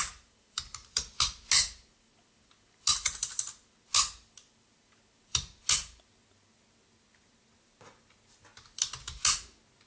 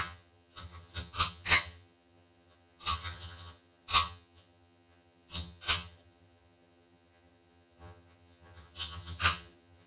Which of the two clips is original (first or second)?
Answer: first